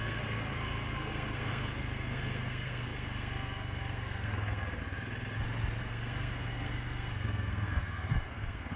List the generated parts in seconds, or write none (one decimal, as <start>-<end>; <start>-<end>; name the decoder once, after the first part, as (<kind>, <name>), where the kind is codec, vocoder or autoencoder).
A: 0.0-4.8 (codec, SNAC); 5.8-8.8